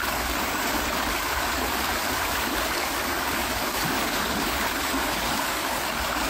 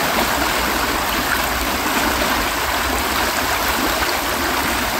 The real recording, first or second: second